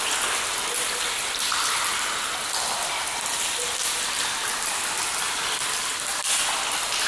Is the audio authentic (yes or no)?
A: yes